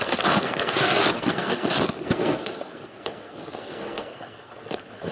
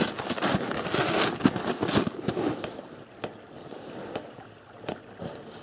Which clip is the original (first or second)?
second